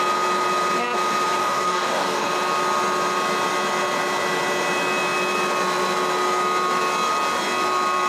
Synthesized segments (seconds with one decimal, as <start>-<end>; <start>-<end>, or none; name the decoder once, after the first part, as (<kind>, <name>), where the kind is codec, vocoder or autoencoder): 1.4-2.3 (codec, DAC)